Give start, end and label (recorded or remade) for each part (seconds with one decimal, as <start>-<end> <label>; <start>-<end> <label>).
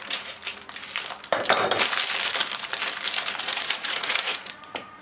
0.0-0.4 remade; 0.4-3.4 recorded; 3.4-5.0 remade